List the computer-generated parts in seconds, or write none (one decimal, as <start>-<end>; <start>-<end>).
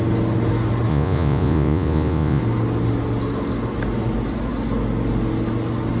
0.9-2.4